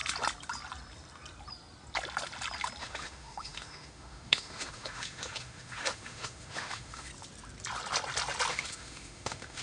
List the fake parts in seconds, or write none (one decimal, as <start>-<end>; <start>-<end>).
2.8-7.1; 8.5-9.6